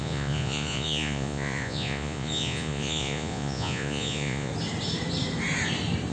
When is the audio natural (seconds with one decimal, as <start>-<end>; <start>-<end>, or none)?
4.5-6.1